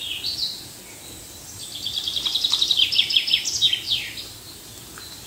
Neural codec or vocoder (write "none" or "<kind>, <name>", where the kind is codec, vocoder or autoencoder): none